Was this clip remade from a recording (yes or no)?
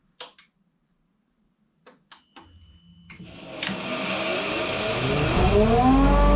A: no